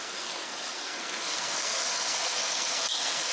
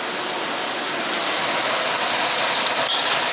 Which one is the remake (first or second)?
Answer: first